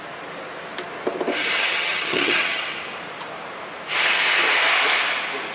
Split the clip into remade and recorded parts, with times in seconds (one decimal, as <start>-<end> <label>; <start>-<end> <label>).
0.0-1.4 recorded; 1.4-2.6 remade; 2.6-5.5 recorded